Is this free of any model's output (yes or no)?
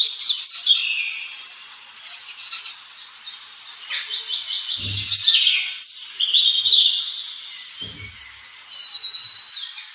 yes